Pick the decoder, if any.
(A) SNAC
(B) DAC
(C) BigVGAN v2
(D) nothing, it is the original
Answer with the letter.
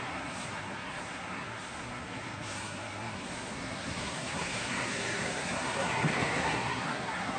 A